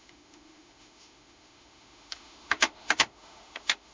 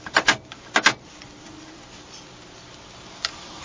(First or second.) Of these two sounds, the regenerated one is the first